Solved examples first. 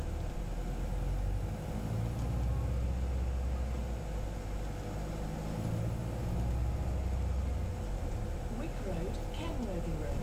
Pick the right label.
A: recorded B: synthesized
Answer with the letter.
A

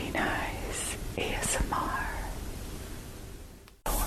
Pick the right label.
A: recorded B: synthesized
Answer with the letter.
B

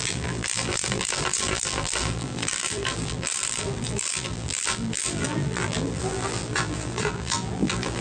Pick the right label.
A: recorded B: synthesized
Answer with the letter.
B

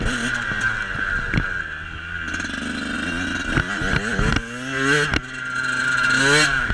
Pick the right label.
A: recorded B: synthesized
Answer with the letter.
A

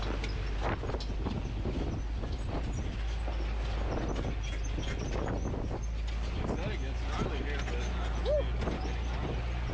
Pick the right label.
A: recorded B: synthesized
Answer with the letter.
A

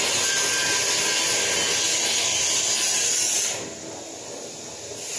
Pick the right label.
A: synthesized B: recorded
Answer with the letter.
B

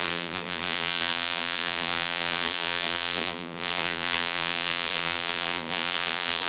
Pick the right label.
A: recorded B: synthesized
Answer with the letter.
B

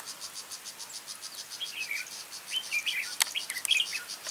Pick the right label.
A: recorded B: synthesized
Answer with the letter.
A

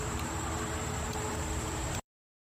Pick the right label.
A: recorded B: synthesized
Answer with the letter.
B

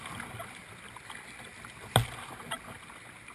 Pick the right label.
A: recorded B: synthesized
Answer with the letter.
A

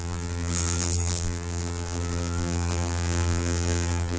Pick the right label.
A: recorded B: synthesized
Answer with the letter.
B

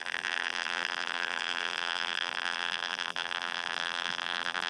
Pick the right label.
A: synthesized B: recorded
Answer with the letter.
A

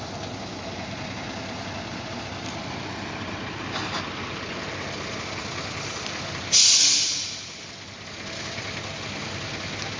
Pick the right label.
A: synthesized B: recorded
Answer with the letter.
B